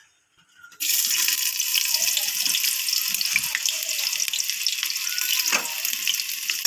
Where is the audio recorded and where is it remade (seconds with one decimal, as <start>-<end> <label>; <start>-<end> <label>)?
0.0-6.7 recorded